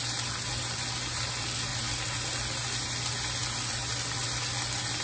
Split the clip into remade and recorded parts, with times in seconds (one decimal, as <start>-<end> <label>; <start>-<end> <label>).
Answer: 0.0-5.0 recorded